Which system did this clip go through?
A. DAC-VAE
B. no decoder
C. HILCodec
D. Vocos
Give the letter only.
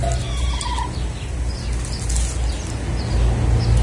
B